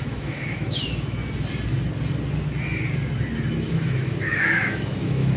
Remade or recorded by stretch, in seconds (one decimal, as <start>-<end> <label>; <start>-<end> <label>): 0.0-1.2 remade; 1.2-3.7 recorded; 3.7-5.4 remade